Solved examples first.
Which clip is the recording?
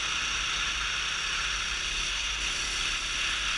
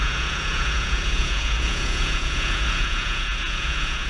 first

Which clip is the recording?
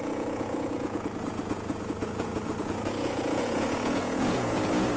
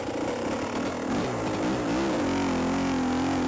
second